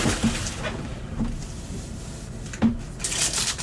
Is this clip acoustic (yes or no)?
yes